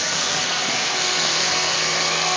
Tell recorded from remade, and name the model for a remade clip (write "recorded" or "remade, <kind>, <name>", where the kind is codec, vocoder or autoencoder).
remade, codec, SNAC